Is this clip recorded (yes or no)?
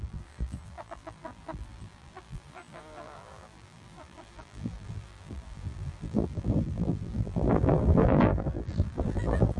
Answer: no